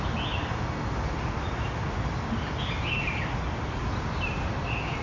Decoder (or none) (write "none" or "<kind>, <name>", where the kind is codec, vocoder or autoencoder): none